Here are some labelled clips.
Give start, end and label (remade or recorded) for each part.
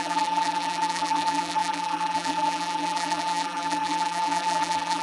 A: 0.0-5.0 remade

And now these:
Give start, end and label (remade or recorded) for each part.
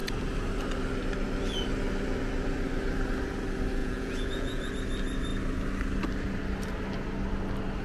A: 0.0-3.8 recorded; 3.8-4.7 remade; 4.7-7.8 recorded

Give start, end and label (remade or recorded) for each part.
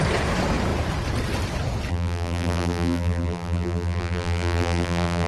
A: 0.0-1.9 recorded; 1.9-5.3 remade